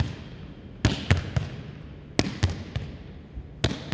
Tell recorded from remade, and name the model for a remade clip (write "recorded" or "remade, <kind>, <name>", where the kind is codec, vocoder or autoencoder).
recorded